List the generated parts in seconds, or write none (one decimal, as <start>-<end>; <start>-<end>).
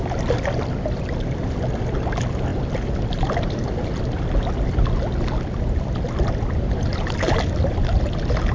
2.5-4.0